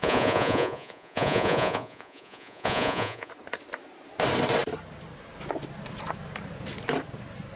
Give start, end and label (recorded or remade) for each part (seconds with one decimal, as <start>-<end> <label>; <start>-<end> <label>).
0.0-3.3 remade; 3.3-7.6 recorded